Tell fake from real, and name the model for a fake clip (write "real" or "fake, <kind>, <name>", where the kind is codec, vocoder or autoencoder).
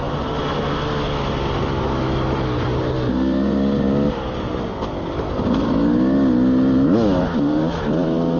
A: real